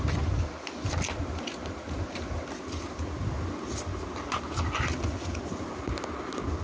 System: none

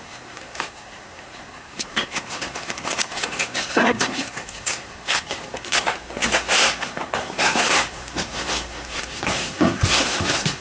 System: codec, SNAC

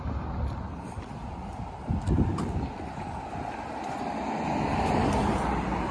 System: none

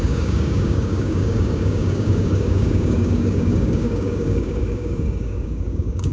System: codec, DAC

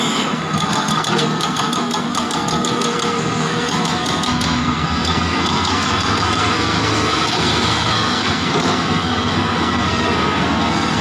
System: codec, SNAC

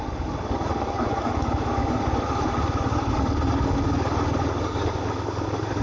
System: codec, DAC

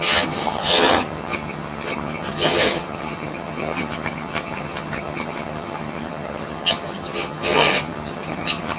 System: vocoder, HiFi-GAN